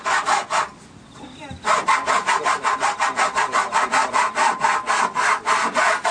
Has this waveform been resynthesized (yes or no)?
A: no